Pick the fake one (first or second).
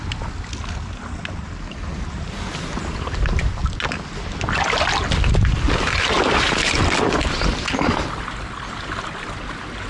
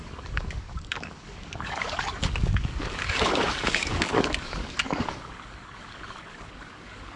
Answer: second